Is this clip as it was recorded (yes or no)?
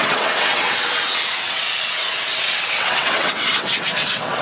no